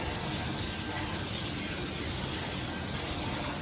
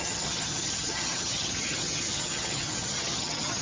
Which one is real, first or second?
first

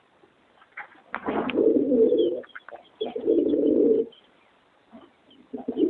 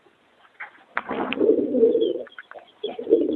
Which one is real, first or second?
first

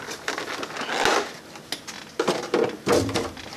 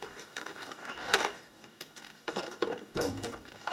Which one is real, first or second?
first